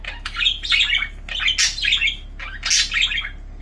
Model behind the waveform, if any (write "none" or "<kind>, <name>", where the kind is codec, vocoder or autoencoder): none